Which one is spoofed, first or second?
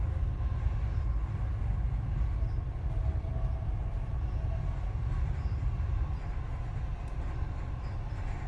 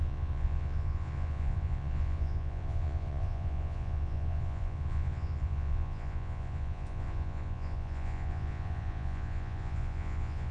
second